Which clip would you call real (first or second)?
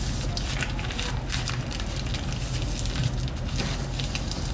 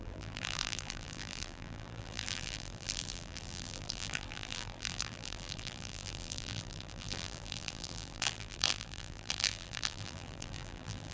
first